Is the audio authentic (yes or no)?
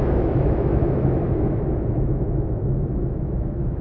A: no